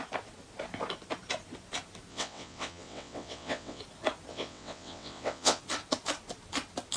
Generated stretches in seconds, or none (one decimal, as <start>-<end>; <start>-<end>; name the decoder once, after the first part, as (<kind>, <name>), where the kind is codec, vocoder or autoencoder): 2.1-3.8 (vocoder, WaveNeXt); 4.3-5.6